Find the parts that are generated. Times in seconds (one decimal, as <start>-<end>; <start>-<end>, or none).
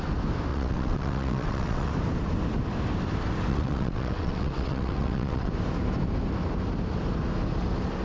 0.5-1.9; 3.5-5.5